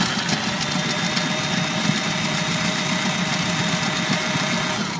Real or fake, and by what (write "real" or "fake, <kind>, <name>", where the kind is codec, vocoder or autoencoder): real